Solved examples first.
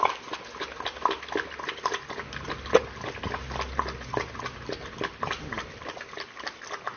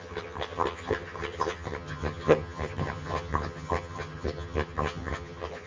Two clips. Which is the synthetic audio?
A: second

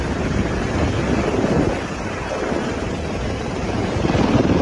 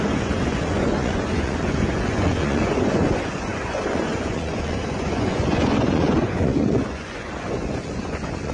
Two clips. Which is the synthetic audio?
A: second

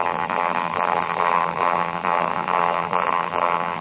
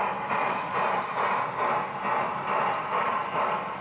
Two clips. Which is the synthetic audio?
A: first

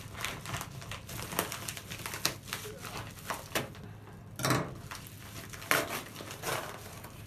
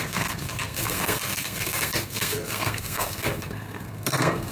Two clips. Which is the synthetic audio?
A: second